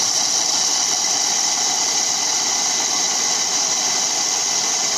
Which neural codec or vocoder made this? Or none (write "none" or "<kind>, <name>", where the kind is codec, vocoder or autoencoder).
none